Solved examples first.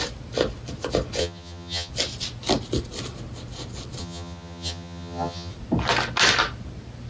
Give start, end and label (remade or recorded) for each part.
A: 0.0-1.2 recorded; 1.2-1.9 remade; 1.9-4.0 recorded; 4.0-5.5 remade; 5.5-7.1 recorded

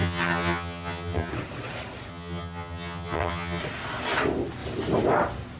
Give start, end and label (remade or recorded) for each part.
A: 0.0-1.3 remade; 1.3-2.1 recorded; 2.1-3.6 remade; 3.6-5.6 recorded

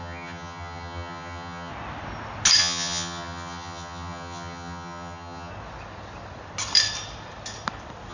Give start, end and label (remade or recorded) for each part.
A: 0.0-1.7 remade; 1.7-2.6 recorded; 2.6-5.5 remade; 5.5-8.1 recorded

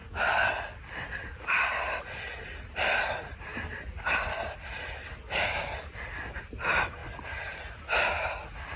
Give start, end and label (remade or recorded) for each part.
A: 0.0-8.8 recorded

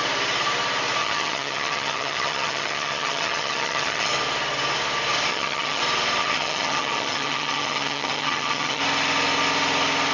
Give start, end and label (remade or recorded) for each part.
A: 0.0-1.0 recorded; 1.0-4.1 remade; 4.1-5.3 recorded; 5.3-5.8 remade; 5.8-6.2 recorded; 6.2-8.8 remade; 8.8-10.1 recorded